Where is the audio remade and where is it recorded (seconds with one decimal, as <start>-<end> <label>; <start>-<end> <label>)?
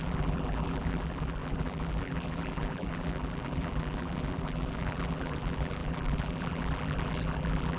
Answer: 0.0-7.8 remade